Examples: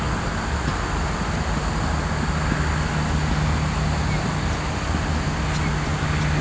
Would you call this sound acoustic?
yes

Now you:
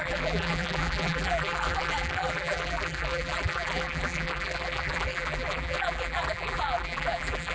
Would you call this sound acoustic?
no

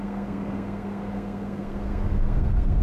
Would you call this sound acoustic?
no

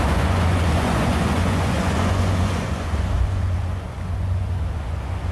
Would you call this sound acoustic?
no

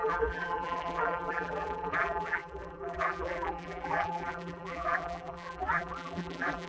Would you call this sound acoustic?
no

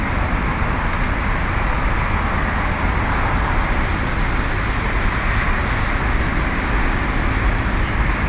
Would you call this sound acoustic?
yes